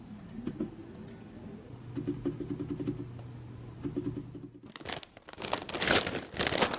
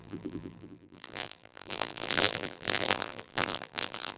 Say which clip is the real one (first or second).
first